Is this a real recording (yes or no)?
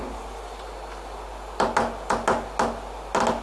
yes